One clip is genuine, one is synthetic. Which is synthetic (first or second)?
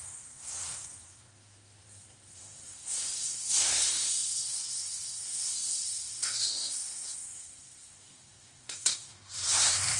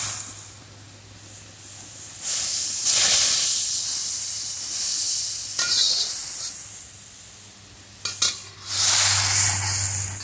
first